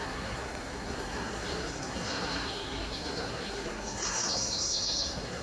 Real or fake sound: fake